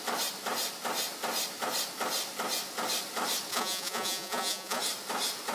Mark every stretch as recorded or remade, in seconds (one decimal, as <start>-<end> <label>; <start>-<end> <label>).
0.0-3.5 recorded; 3.5-4.8 remade; 4.8-5.5 recorded